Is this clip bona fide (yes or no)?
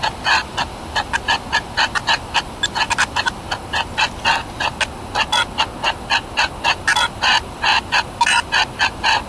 yes